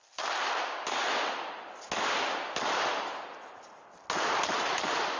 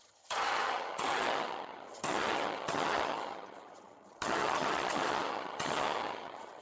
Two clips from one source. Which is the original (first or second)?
first